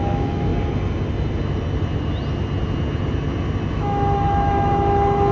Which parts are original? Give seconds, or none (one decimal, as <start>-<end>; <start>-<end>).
0.5-3.7